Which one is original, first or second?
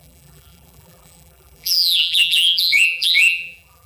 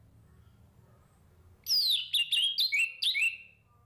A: second